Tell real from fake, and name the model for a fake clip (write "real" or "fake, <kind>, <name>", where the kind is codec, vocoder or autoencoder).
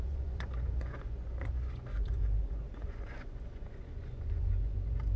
fake, vocoder, Vocos